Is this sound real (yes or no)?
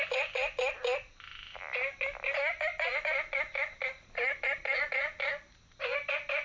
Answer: yes